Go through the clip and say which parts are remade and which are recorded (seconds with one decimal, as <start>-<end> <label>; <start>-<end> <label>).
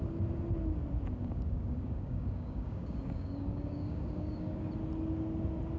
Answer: 0.0-1.2 recorded; 1.2-4.7 remade; 4.7-5.8 recorded